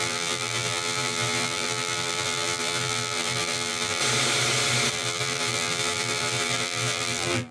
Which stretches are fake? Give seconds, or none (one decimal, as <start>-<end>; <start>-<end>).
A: 0.0-4.0; 4.9-7.5